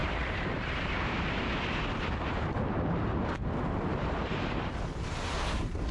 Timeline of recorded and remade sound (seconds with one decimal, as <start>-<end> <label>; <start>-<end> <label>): 0.0-1.3 remade; 1.3-3.9 recorded; 3.9-4.8 remade; 4.8-5.9 recorded